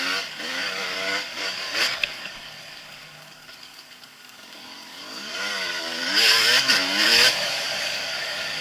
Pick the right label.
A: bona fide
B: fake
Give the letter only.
B